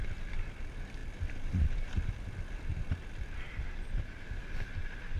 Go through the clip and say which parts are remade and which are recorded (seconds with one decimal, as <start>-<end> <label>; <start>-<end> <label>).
0.0-5.2 recorded